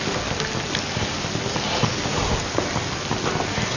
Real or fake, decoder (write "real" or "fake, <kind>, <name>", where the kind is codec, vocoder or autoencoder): real